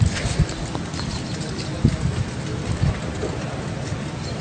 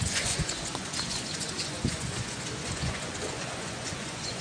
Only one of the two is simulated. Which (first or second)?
second